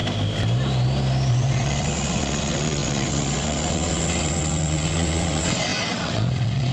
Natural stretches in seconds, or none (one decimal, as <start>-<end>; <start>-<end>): 0.0-1.3